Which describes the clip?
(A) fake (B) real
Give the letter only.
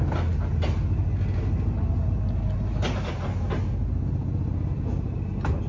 B